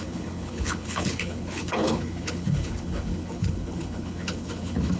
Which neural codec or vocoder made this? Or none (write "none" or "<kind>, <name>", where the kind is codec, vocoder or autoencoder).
codec, HILCodec